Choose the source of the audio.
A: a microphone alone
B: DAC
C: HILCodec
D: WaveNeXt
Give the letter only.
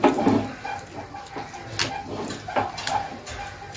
A